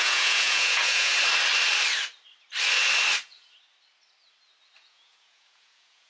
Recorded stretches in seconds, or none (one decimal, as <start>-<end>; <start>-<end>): 1.1-4.8